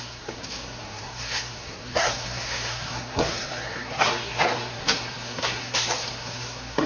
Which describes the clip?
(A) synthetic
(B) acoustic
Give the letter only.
A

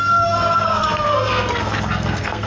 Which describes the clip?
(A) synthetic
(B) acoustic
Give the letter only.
A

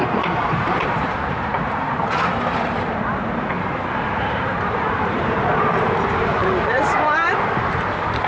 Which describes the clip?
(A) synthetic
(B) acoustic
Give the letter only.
A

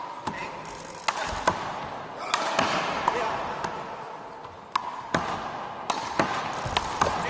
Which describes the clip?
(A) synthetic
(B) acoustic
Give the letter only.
B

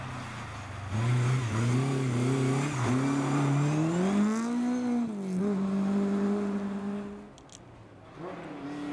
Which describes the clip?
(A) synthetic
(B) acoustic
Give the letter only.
B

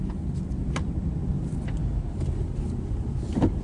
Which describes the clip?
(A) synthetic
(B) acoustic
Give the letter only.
B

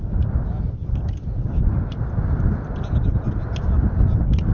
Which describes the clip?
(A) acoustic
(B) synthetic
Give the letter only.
A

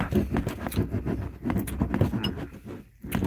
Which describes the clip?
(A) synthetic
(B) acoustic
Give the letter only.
B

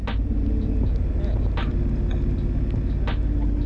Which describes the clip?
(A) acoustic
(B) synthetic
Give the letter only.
A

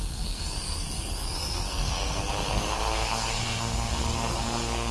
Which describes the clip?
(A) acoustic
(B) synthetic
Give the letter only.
B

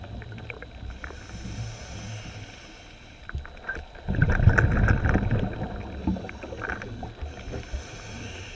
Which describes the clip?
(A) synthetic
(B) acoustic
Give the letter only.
B